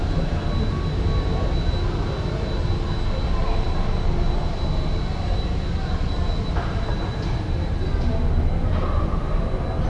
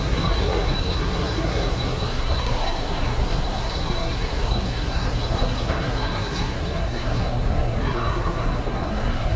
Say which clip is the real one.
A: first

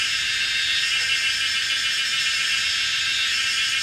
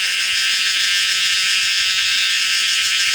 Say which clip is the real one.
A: first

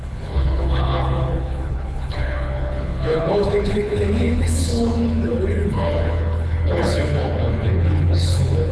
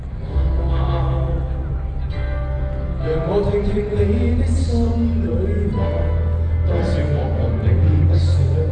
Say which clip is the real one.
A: second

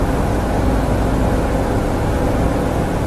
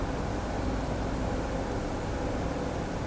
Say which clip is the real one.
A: first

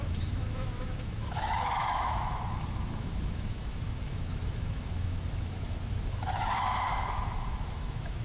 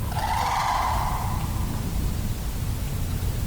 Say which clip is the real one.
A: second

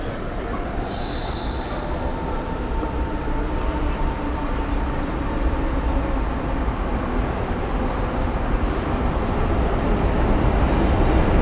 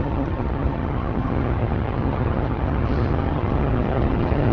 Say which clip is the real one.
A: first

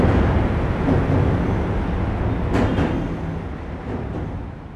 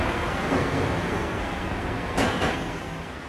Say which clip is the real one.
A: first